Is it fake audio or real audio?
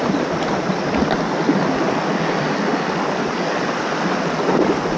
real